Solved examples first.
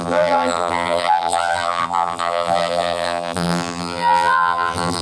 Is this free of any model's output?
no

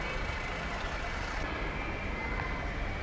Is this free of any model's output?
yes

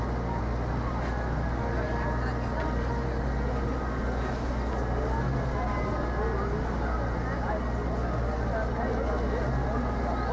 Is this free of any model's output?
yes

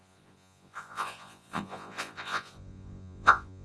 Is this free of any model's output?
no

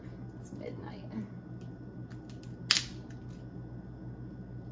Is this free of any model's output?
yes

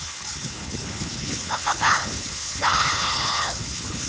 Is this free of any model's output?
no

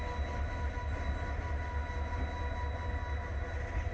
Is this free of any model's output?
yes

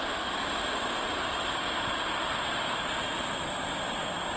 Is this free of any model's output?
yes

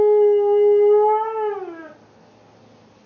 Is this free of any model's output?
yes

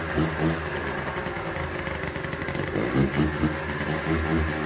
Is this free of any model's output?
yes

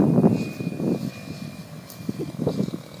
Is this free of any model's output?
yes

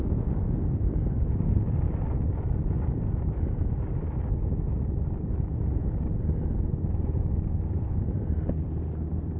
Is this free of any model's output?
yes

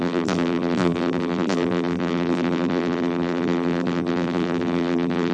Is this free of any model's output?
no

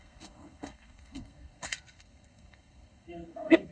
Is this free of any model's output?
no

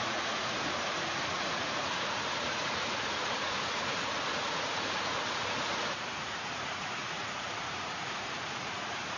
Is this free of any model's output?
no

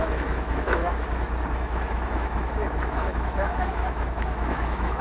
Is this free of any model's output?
no